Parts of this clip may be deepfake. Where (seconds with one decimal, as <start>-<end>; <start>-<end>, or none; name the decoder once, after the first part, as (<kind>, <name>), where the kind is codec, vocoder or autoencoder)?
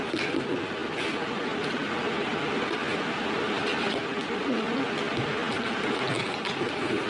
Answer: none